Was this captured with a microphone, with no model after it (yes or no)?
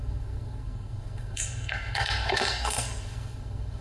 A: no